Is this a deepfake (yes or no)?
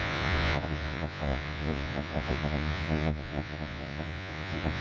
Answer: yes